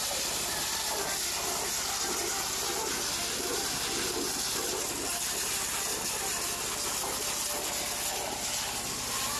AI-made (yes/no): no